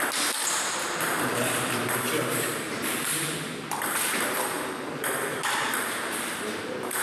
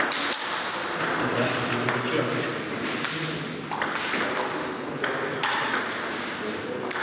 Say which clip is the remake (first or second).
first